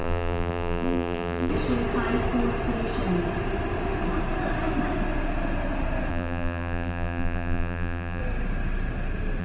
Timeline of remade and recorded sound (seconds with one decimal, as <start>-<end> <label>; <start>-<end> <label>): 0.0-1.5 remade; 1.5-6.1 recorded; 6.1-8.2 remade; 8.2-9.4 recorded

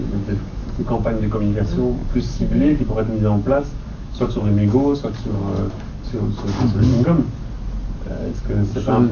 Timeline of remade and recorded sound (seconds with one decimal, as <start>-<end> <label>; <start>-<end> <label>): 0.0-7.4 remade; 7.4-8.1 recorded; 8.1-9.1 remade

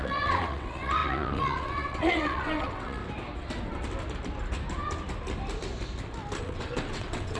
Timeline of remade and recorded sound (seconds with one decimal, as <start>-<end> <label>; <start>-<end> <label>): 0.0-3.0 remade; 3.0-6.4 recorded; 6.4-7.4 remade

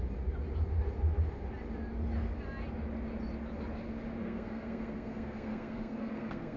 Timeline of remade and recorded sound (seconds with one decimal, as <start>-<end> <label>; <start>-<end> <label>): 0.0-4.2 recorded; 4.2-6.6 remade

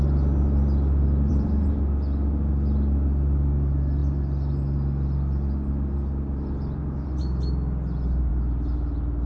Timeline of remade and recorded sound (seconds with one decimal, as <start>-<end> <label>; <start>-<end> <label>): 0.0-1.3 recorded; 1.3-1.8 remade; 1.8-9.3 recorded

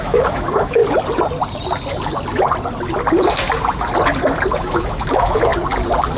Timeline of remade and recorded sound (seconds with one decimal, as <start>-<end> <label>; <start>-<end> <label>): 0.0-0.8 remade; 0.8-4.5 recorded; 4.5-5.5 remade; 5.5-6.2 recorded